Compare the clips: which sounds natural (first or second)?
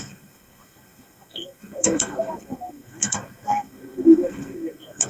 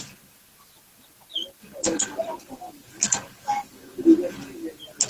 second